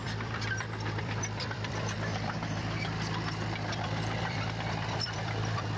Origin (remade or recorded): remade